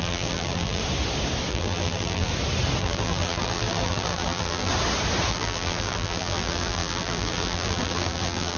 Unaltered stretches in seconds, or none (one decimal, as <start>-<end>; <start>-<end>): 0.8-1.5; 2.3-2.8; 4.7-5.3